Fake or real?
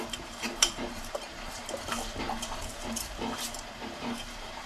fake